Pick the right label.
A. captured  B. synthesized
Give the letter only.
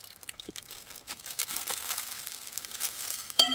B